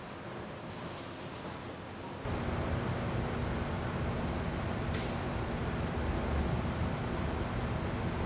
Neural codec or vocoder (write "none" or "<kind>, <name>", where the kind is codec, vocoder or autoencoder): none